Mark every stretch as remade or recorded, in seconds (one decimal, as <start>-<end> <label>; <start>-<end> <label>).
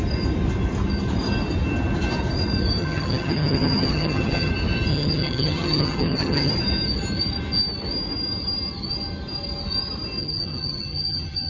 0.0-2.8 recorded; 2.8-4.5 remade; 4.5-4.9 recorded; 4.9-6.5 remade; 6.5-10.2 recorded; 10.2-11.5 remade